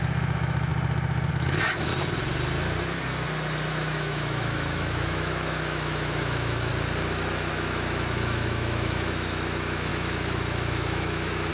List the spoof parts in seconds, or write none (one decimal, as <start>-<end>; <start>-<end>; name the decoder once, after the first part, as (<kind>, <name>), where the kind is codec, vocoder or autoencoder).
0.0-0.7 (autoencoder, DAC-VAE); 1.3-1.9; 3.7-6.7; 7.5-11.5